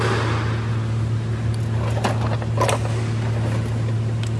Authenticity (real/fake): real